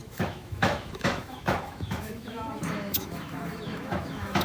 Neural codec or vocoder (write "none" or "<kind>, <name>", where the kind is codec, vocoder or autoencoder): autoencoder, DAC-VAE